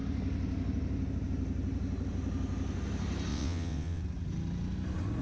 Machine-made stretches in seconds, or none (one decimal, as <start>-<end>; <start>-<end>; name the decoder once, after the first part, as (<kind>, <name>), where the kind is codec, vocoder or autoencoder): 3.3-4.0 (vocoder, WaveNeXt)